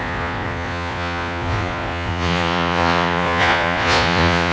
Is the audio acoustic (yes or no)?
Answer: no